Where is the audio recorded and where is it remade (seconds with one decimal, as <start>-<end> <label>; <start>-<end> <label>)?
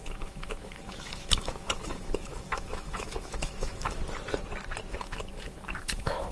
0.0-4.0 remade; 4.0-4.9 recorded; 4.9-6.3 remade